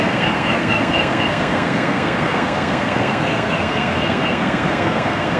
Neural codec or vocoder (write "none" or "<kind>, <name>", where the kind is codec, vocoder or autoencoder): codec, SNAC